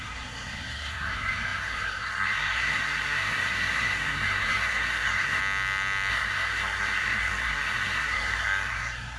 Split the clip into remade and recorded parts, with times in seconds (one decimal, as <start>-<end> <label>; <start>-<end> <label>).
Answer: 0.0-5.4 remade; 5.4-6.1 recorded; 6.1-9.2 remade